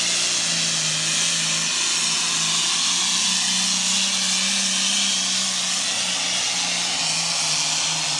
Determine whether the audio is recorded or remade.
recorded